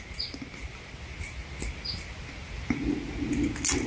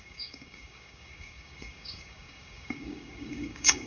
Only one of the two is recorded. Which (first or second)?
first